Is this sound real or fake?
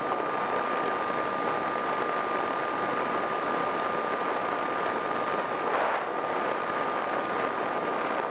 real